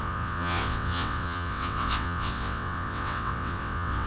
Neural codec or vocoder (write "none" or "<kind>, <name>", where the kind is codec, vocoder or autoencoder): vocoder, WaveNeXt